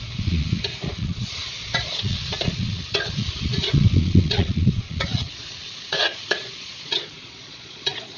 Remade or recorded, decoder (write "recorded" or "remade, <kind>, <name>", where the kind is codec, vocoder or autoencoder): remade, vocoder, Vocos